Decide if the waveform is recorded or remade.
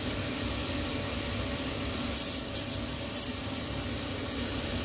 recorded